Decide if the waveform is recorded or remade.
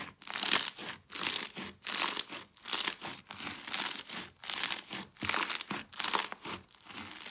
recorded